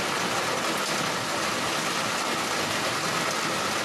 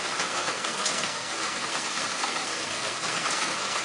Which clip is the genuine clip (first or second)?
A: first